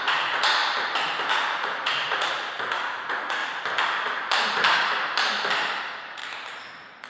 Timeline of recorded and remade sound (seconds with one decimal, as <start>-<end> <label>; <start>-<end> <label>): 0.0-0.6 remade; 0.6-1.3 recorded; 1.3-3.4 remade; 3.4-5.8 recorded; 5.8-6.2 remade; 6.2-7.1 recorded